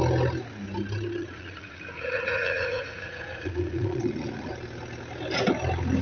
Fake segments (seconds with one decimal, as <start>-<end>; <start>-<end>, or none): 1.2-4.5